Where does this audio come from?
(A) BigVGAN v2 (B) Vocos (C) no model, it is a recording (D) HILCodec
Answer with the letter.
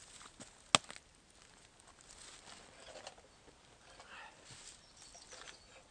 C